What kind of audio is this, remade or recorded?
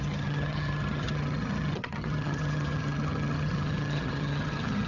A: remade